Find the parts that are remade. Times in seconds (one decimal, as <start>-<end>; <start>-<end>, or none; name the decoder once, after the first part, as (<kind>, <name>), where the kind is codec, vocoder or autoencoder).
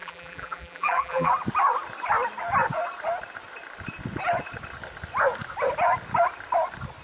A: 0.0-1.3 (vocoder, BigVGAN v2)